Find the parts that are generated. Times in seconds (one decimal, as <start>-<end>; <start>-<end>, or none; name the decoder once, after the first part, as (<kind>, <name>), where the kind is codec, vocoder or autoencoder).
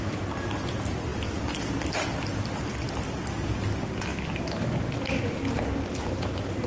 none